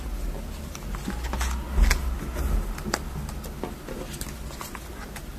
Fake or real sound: real